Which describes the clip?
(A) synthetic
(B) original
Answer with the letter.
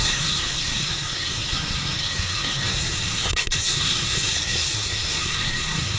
A